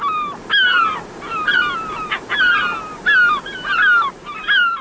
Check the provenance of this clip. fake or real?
real